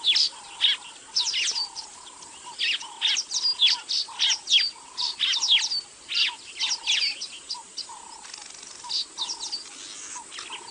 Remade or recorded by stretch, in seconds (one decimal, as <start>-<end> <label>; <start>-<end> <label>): 0.0-10.7 recorded